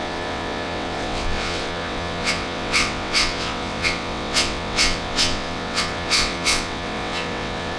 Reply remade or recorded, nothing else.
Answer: remade